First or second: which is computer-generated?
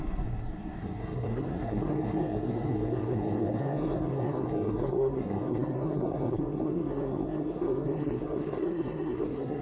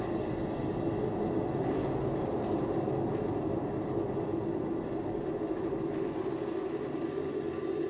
first